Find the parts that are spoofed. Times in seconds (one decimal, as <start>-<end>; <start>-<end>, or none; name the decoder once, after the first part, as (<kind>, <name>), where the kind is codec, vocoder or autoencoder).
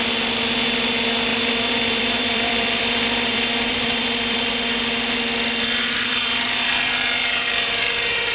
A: 1.3-4.5 (vocoder, BigVGAN v2)